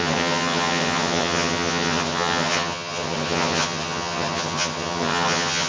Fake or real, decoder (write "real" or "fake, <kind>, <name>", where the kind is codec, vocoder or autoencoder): fake, vocoder, HiFi-GAN